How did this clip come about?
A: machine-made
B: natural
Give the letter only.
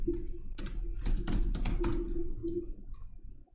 B